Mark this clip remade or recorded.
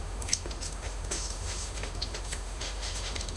remade